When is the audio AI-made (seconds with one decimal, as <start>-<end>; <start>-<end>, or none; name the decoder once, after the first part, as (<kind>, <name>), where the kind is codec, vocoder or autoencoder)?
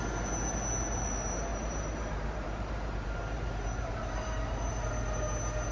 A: 1.5-4.9 (vocoder, BigVGAN v2)